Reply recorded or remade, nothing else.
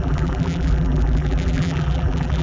remade